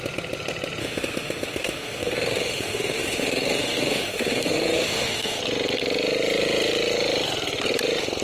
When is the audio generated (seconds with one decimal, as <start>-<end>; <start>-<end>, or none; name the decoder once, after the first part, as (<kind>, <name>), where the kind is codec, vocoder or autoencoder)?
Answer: 0.8-5.4 (autoencoder, DAC-VAE)